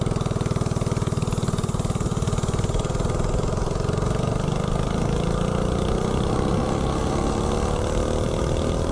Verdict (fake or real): real